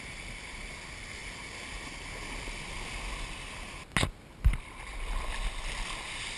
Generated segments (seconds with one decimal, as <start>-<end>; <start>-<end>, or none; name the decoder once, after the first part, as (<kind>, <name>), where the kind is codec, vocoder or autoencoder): none